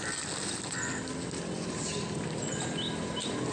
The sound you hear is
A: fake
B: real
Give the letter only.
B